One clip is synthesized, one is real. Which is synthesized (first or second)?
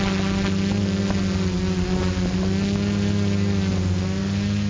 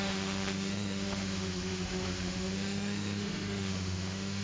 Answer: second